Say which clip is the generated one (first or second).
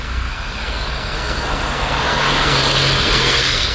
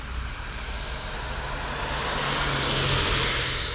first